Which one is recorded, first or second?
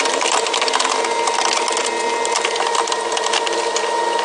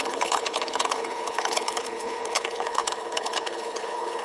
first